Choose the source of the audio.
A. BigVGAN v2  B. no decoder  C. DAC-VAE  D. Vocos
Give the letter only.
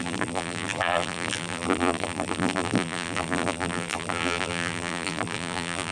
A